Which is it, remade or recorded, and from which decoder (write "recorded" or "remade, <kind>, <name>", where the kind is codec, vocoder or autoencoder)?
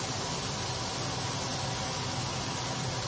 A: recorded